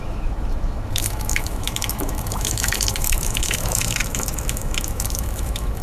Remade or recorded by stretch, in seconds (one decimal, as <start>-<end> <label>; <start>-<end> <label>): 0.0-5.8 remade